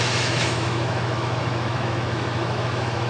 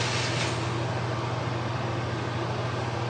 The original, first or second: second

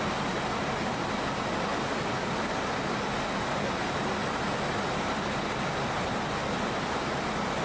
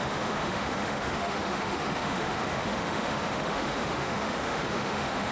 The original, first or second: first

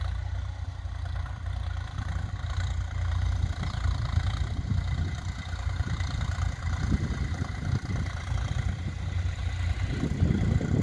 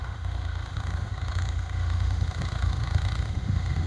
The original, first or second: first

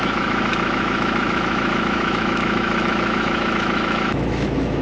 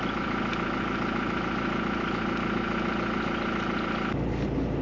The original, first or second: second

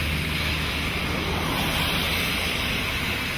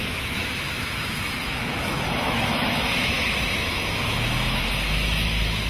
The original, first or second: first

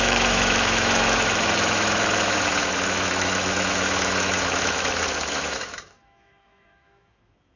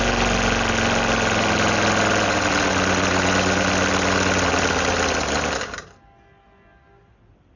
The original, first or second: second